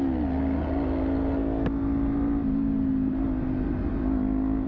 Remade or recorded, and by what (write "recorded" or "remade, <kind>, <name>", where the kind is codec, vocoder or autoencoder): recorded